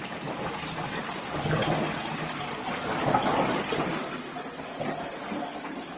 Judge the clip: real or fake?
real